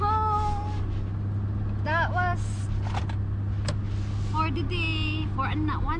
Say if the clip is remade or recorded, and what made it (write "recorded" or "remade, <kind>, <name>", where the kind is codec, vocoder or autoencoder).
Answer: recorded